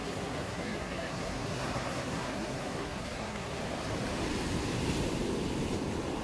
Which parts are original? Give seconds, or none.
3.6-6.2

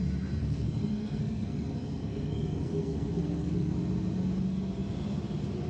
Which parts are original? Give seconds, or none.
0.0-0.4; 3.8-5.7

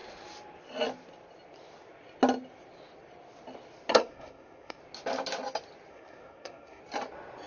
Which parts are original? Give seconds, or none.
0.0-3.9; 4.8-5.9; 6.8-7.5

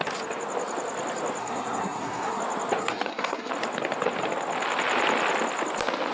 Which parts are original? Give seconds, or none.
0.0-1.4; 2.4-2.8; 3.5-6.1

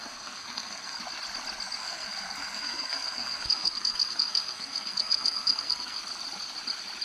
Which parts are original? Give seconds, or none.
1.0-1.8; 6.0-7.0

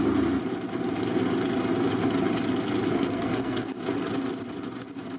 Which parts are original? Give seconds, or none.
0.0-2.9; 3.8-5.2